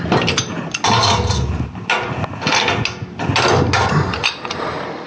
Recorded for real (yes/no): yes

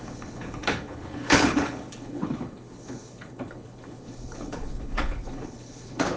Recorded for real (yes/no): no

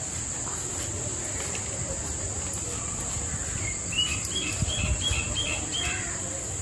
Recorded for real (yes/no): no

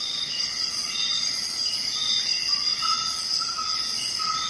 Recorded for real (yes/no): no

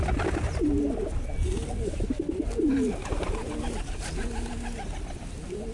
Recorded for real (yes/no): yes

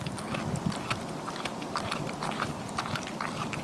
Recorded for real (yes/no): yes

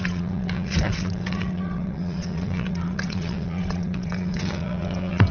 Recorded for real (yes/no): no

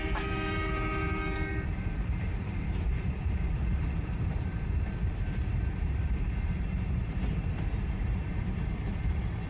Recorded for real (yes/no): no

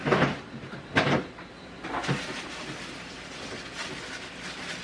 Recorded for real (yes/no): yes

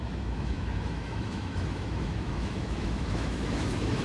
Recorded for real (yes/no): no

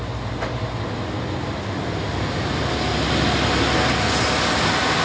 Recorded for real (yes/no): yes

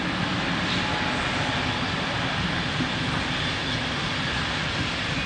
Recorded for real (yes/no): yes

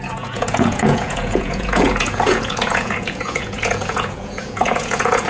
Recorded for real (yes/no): no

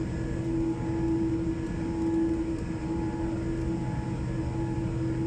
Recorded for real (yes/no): yes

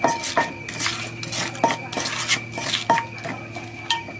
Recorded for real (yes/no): yes